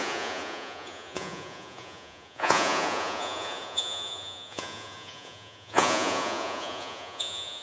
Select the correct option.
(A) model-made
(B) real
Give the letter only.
A